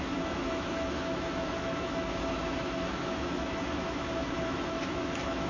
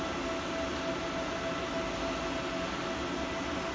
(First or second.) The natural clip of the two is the second